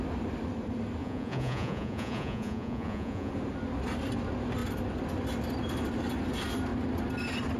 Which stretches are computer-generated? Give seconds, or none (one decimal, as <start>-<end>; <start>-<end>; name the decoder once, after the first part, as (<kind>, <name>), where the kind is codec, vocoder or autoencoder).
1.0-3.3 (vocoder, Vocos)